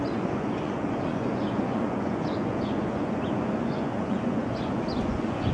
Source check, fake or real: fake